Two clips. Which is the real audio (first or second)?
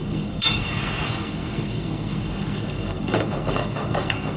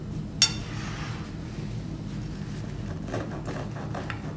second